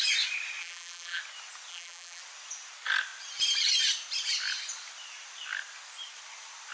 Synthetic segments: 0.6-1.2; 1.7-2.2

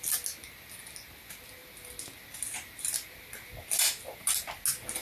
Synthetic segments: none

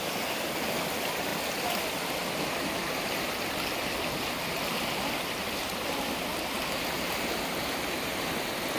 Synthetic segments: none

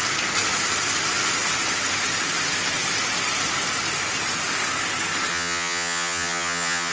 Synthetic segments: 5.3-6.9

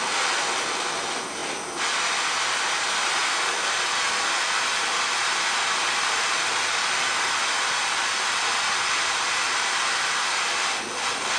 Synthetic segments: none